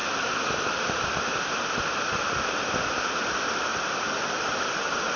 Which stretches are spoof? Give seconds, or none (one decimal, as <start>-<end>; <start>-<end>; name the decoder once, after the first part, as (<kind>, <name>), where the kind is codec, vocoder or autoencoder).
0.0-3.1 (vocoder, BigVGAN v2); 3.7-4.8

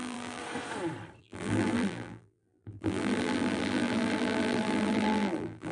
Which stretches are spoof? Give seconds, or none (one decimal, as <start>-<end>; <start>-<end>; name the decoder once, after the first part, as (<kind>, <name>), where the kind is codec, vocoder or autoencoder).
0.0-0.4 (vocoder, BigVGAN v2); 1.2-5.7

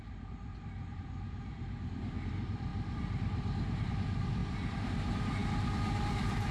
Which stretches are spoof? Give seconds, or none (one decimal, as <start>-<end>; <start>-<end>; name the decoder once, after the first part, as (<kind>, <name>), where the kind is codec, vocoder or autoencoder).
0.0-4.4 (vocoder, BigVGAN v2); 4.9-5.4; 6.1-6.5

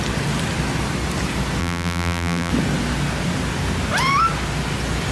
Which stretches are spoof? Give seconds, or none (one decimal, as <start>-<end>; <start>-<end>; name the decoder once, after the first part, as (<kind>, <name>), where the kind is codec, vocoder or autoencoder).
1.6-2.5 (vocoder, BigVGAN v2)

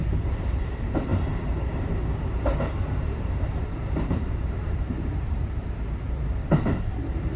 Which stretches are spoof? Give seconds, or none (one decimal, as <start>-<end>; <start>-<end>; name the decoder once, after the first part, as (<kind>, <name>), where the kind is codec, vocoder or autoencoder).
0.0-6.3 (vocoder, BigVGAN v2)

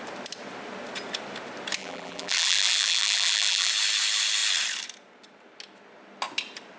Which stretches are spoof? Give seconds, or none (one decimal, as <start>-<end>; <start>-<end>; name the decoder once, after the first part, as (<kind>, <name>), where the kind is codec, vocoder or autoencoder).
1.8-3.7 (vocoder, BigVGAN v2)

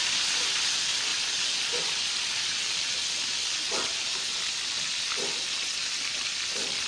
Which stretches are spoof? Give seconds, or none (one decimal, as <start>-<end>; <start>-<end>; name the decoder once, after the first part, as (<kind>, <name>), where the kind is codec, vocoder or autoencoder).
none

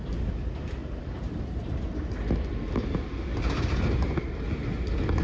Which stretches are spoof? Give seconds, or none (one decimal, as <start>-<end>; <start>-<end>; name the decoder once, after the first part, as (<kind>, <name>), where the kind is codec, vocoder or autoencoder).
0.8-1.9 (vocoder, BigVGAN v2)